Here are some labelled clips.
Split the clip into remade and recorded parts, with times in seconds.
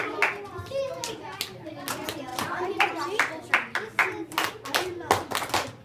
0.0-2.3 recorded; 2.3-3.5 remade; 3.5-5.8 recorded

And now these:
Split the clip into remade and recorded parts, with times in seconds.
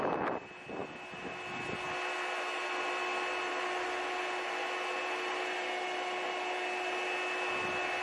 0.0-8.0 recorded